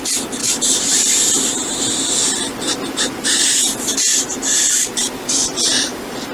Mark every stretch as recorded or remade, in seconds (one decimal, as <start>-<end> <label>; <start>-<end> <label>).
0.0-4.1 recorded; 4.1-5.6 remade; 5.6-6.3 recorded

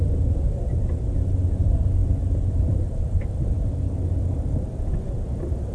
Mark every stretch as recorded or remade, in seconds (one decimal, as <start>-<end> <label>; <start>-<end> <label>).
0.0-2.0 recorded; 2.0-3.6 remade; 3.6-5.7 recorded

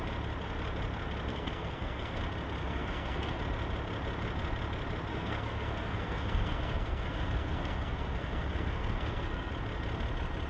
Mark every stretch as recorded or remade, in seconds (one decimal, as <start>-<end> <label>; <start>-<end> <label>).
0.0-1.3 recorded; 1.3-2.2 remade; 2.2-2.6 recorded; 2.6-3.4 remade; 3.4-5.1 recorded; 5.1-9.5 remade; 9.5-10.5 recorded